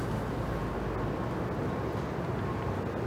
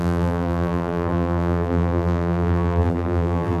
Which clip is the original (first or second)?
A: first